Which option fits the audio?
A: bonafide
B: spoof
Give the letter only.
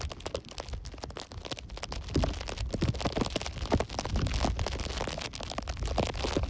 A